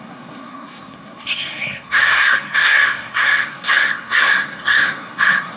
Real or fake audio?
fake